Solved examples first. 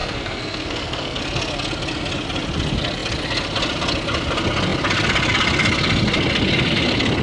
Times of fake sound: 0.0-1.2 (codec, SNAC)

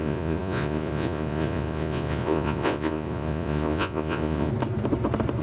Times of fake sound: 0.0-4.5 (vocoder, Vocos)